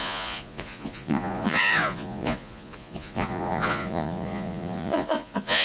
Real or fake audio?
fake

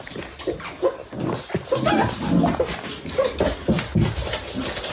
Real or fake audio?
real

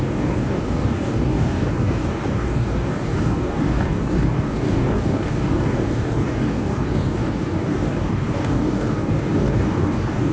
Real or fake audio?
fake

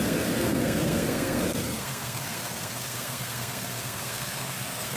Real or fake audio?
fake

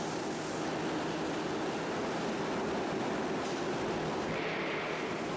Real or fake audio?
real